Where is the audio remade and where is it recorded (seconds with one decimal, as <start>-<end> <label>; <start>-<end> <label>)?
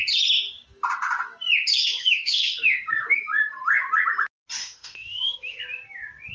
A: 0.0-1.8 recorded; 1.8-2.9 remade; 2.9-4.6 recorded; 4.6-5.6 remade; 5.6-6.3 recorded